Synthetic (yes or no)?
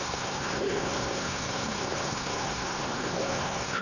yes